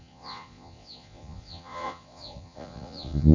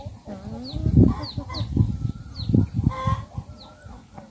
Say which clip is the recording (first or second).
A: second